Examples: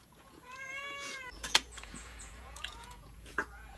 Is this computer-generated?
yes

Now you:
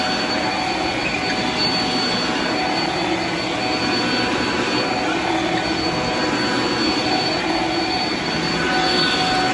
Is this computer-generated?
no